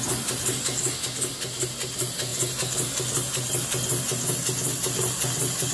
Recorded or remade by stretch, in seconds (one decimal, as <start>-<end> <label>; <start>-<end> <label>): 0.0-5.7 recorded